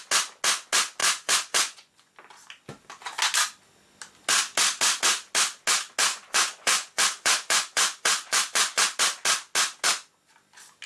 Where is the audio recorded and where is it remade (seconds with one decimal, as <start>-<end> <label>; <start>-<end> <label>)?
0.0-1.0 recorded; 1.0-2.1 remade; 2.1-6.1 recorded; 6.1-8.8 remade; 8.8-10.9 recorded